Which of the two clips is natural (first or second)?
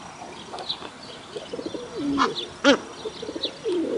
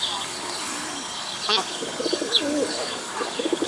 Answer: first